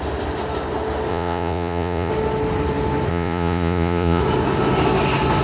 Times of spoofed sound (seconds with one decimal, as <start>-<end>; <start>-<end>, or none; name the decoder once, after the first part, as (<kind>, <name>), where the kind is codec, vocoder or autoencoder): 1.1-2.1 (vocoder, Vocos); 3.1-4.2